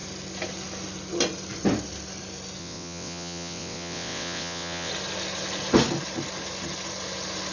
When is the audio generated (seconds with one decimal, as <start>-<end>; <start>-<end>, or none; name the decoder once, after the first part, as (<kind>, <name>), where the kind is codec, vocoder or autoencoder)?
2.6-4.9 (vocoder, WaveNeXt)

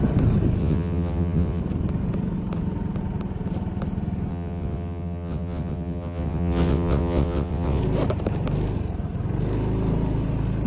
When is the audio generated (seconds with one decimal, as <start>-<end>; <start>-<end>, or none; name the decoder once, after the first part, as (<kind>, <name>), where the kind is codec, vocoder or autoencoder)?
0.6-1.6 (vocoder, WaveNeXt); 4.3-7.8

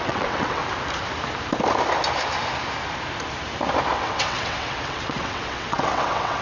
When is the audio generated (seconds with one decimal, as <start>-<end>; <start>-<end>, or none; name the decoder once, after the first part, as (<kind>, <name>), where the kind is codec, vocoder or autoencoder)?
0.0-0.6 (vocoder, WaveNeXt); 4.0-6.4

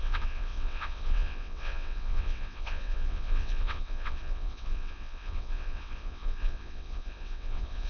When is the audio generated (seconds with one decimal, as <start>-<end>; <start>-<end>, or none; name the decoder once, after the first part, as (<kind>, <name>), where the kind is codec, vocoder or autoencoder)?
0.0-7.9 (vocoder, WaveNeXt)

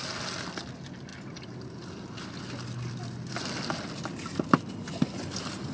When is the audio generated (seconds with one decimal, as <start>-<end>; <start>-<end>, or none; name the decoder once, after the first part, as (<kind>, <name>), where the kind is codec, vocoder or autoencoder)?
none

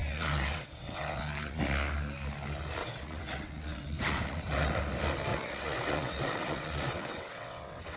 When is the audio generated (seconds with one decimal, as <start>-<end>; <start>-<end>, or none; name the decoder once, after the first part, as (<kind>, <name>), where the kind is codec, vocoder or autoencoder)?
0.0-1.6 (vocoder, WaveNeXt); 2.8-4.8; 5.3-8.0

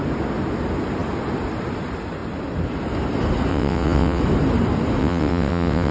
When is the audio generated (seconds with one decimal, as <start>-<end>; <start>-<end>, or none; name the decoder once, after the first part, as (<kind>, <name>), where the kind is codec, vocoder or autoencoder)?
3.5-4.2 (vocoder, WaveNeXt); 5.0-5.9